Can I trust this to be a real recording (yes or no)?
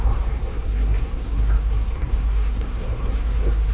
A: no